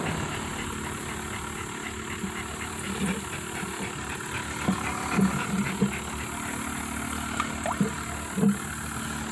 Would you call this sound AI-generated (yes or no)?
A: no